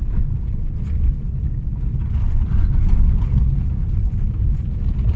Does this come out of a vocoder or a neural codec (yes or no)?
no